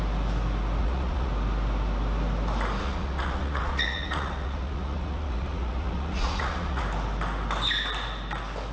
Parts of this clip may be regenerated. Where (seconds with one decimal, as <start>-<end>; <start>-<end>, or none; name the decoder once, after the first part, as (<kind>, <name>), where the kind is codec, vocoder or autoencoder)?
0.8-1.3 (vocoder, Vocos); 2.8-6.8